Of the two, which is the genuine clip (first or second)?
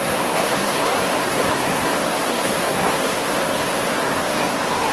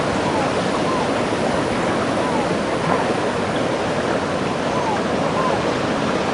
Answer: second